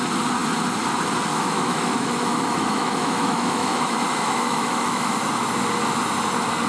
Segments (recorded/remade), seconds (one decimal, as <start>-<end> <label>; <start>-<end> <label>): 0.0-1.3 recorded; 1.3-5.2 remade; 5.2-6.7 recorded